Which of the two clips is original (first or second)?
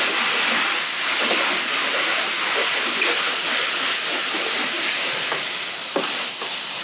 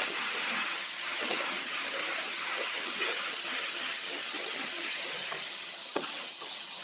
first